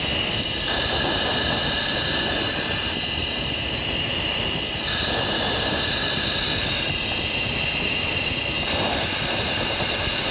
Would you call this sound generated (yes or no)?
no